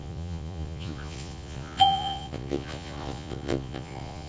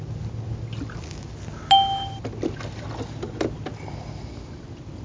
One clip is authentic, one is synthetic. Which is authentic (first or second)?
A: second